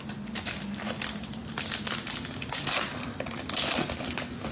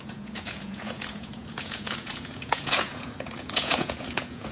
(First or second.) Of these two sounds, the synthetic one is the second